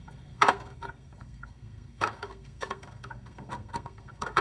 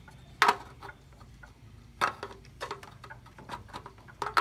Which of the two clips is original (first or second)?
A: second